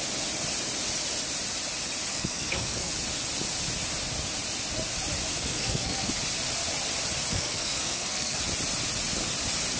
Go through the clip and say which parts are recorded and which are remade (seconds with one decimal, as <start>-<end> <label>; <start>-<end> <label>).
0.0-2.1 recorded; 2.1-2.9 remade; 2.9-5.3 recorded; 5.3-6.1 remade; 6.1-7.3 recorded; 7.3-8.4 remade; 8.4-9.8 recorded